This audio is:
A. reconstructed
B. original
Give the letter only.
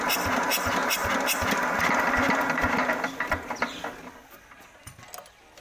B